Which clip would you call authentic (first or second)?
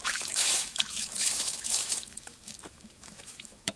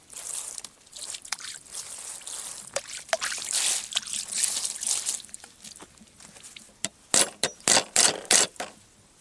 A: second